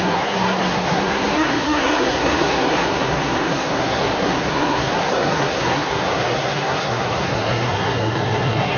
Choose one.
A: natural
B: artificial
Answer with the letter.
B